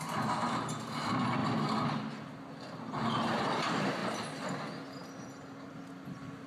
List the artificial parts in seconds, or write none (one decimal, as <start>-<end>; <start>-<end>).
4.0-4.5